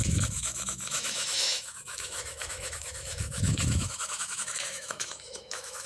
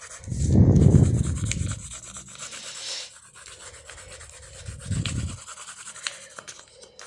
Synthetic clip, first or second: first